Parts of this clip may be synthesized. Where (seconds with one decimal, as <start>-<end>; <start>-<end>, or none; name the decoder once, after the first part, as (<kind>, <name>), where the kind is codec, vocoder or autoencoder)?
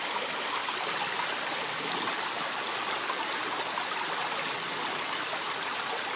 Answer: none